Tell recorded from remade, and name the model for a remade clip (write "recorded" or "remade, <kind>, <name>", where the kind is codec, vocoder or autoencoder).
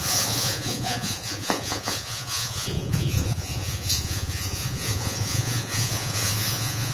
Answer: remade, vocoder, Vocos